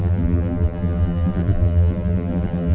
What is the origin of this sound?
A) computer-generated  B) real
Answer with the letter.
A